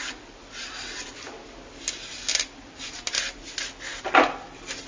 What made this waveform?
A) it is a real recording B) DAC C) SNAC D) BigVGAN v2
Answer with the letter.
A